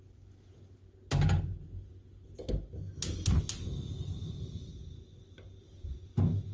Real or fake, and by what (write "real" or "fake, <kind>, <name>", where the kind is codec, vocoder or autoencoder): real